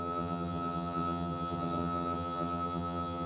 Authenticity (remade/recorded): remade